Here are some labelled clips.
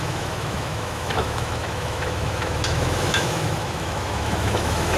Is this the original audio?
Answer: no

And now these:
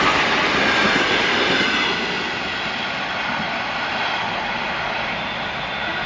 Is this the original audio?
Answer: yes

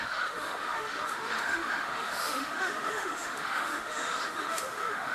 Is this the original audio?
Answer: no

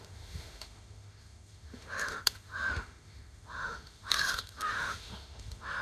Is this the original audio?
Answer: no